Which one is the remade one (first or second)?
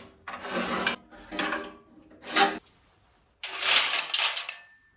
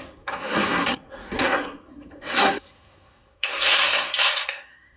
second